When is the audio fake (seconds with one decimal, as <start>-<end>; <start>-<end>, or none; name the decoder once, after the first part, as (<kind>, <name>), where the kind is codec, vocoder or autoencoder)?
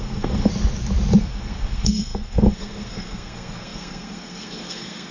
0.0-0.5 (codec, SNAC); 1.2-5.1